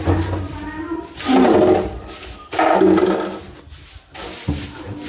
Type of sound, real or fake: real